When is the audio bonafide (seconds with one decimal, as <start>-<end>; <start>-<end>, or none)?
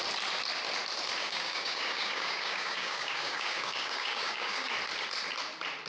0.0-1.2; 4.7-5.9